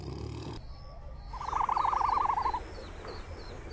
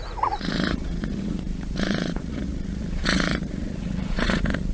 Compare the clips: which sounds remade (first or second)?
second